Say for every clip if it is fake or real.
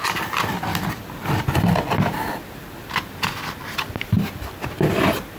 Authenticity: real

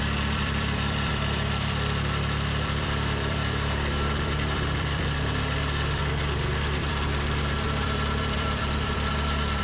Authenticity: fake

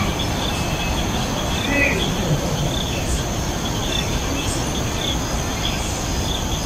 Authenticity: real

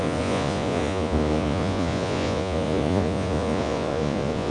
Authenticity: fake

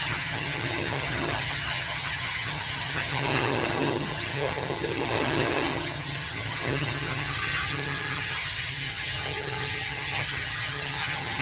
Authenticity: fake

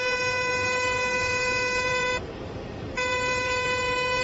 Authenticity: fake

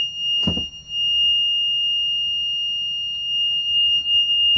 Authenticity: real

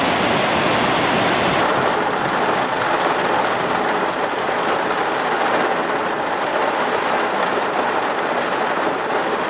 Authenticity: real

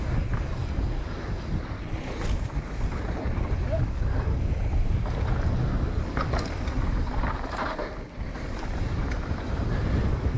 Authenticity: real